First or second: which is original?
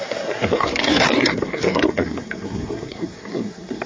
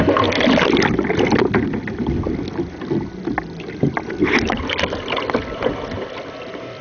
second